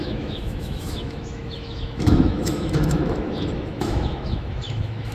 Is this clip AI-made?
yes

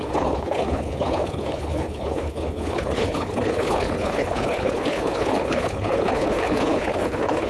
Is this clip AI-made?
yes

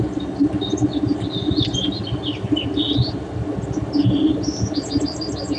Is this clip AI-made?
no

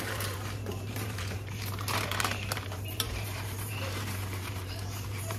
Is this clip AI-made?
yes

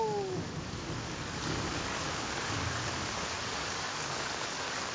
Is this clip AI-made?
yes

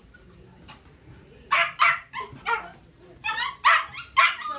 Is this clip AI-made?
no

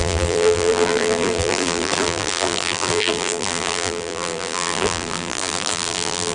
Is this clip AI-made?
yes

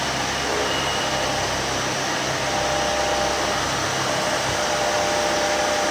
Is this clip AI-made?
no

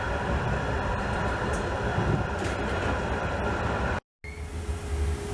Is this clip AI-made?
no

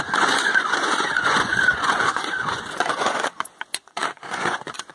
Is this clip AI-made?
yes